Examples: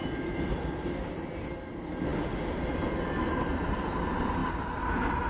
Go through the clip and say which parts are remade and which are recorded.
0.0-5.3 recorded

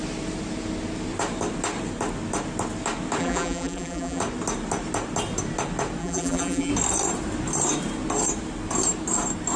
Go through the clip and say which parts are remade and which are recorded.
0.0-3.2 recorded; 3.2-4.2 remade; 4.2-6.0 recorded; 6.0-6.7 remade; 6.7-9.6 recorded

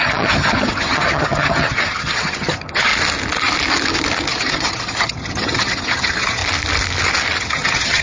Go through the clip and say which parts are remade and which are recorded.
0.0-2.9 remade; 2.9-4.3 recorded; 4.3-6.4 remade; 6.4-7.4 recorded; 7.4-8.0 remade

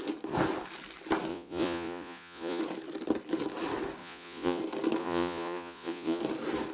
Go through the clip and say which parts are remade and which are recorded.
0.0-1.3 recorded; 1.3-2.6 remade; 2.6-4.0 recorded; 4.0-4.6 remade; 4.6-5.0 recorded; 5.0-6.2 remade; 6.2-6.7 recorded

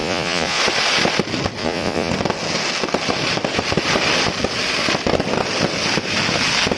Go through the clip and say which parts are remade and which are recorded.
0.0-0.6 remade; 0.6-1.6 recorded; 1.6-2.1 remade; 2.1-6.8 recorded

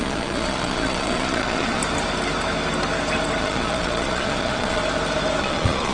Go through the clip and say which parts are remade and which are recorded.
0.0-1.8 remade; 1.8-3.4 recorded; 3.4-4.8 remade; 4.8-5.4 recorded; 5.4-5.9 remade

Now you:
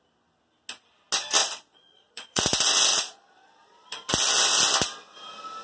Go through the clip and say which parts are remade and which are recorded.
0.0-1.4 recorded; 1.4-2.4 remade; 2.4-2.9 recorded; 2.9-3.9 remade; 3.9-5.6 recorded